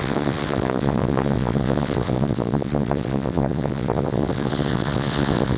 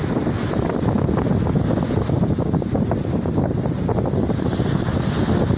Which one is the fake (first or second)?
first